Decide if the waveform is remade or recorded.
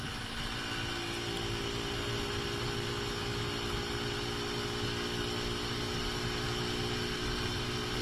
recorded